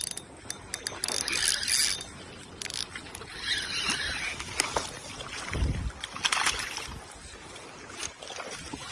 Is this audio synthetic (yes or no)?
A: no